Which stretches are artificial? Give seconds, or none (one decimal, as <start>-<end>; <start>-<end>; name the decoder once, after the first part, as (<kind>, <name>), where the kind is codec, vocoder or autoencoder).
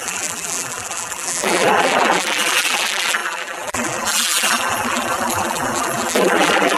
0.0-6.8 (vocoder, BigVGAN v2)